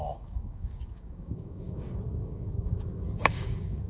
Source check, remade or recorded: remade